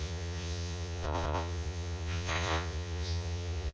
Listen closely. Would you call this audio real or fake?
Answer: fake